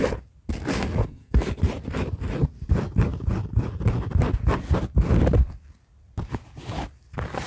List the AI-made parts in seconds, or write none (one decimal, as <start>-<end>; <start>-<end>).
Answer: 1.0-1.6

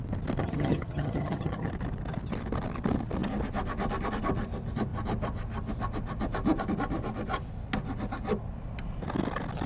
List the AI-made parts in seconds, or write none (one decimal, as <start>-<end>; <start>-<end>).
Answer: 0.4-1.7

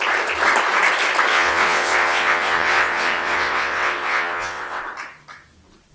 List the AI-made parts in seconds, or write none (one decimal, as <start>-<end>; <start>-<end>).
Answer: 1.3-4.8

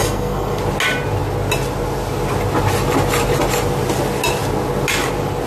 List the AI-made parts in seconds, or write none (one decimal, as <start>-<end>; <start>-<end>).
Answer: 0.0-0.6